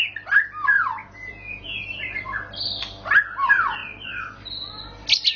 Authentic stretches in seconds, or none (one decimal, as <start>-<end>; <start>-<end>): 0.0-1.0; 1.8-5.4

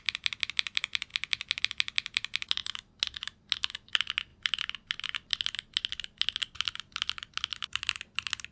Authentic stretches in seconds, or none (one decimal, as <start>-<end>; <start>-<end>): 0.0-8.5